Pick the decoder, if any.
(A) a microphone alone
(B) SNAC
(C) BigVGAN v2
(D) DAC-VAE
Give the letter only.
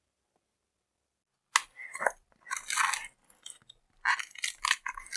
A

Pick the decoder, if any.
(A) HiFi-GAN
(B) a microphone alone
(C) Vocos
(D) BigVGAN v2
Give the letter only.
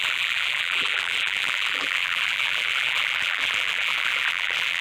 D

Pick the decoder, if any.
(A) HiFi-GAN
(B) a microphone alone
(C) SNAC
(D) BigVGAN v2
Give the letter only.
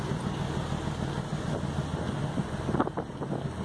B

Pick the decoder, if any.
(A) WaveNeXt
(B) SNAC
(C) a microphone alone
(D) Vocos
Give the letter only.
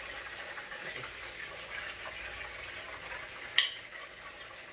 C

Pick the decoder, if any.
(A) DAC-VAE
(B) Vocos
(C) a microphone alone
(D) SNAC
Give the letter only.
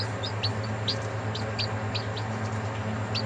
C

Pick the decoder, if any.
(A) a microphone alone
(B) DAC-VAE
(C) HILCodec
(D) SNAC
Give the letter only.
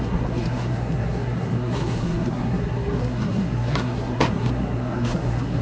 D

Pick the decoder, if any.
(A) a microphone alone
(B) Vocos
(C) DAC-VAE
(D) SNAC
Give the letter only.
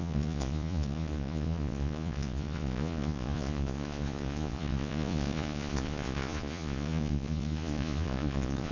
B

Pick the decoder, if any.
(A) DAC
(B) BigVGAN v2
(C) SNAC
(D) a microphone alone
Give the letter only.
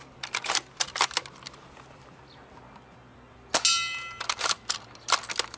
D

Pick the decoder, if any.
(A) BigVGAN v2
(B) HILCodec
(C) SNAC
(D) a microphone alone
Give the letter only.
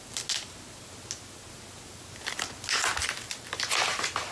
D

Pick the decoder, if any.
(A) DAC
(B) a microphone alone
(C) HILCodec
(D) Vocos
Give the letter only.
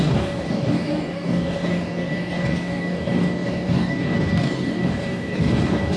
A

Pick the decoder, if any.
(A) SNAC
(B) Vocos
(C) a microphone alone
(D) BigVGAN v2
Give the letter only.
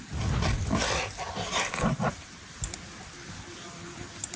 D